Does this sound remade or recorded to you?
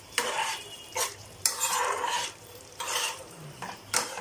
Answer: remade